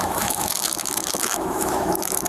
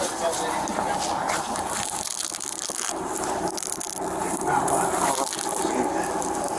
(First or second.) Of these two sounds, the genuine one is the second